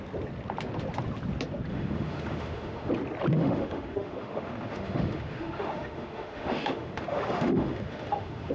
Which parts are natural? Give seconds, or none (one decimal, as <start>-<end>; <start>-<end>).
0.0-1.7; 2.9-3.3